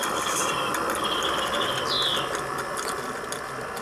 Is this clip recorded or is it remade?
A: recorded